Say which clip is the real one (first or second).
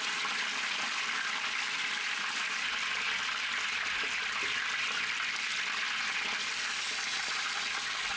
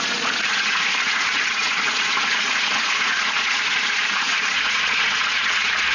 first